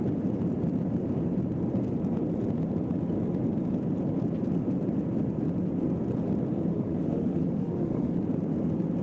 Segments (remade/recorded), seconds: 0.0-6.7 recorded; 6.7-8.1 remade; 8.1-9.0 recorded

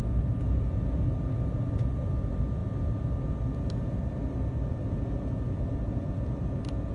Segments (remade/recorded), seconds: 0.0-6.9 recorded

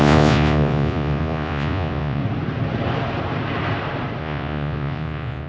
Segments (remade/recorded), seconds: 0.0-2.2 remade; 2.2-4.2 recorded; 4.2-5.5 remade

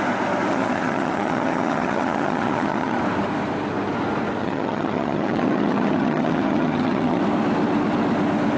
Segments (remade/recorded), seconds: 0.0-0.5 recorded; 0.5-3.0 remade; 3.0-4.4 recorded; 4.4-7.2 remade; 7.2-8.6 recorded